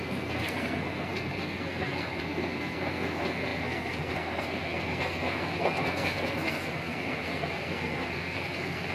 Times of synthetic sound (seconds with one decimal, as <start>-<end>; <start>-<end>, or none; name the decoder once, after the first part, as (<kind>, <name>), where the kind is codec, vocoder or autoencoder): 0.0-8.9 (codec, SNAC)